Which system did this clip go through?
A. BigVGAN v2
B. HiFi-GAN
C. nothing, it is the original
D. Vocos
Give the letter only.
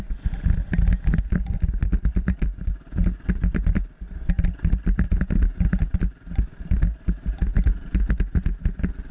C